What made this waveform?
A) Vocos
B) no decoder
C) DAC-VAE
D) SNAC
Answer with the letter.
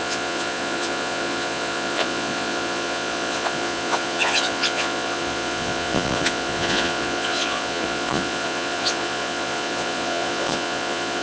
A